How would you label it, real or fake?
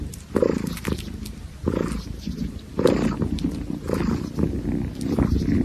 real